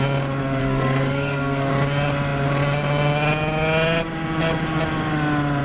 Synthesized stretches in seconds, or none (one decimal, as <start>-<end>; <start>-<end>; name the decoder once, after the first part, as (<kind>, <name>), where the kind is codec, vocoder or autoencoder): 0.6-1.7 (codec, SNAC)